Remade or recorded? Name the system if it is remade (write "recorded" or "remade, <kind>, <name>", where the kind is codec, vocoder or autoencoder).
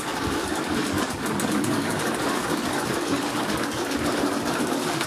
remade, codec, DAC